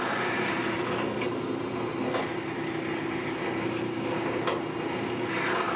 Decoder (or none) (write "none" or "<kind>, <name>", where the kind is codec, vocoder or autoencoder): none